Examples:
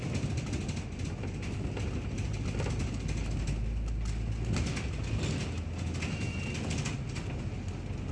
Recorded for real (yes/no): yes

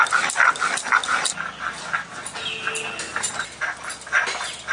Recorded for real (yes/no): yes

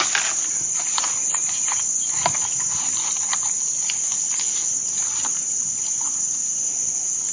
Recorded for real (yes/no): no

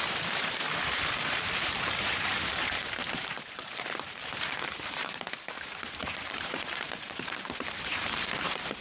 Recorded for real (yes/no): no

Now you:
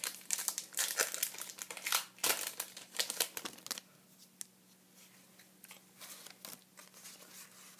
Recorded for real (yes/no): yes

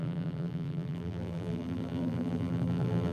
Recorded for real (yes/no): no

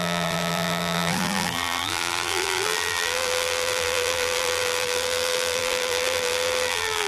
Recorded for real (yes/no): no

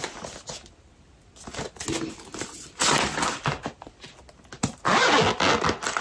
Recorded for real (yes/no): yes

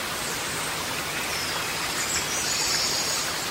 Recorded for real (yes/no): yes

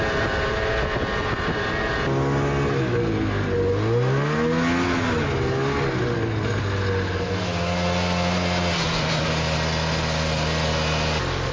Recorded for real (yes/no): yes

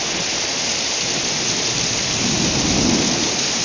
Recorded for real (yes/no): no